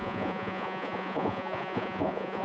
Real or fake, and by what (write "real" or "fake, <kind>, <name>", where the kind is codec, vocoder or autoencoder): fake, vocoder, Vocos